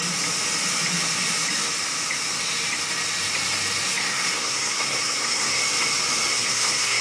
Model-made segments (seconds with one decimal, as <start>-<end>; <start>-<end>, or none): 4.0-5.6; 6.3-7.0